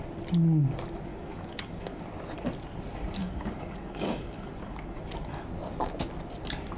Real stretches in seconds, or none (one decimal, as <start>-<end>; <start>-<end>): 0.0-1.1; 2.0-3.2; 5.0-6.8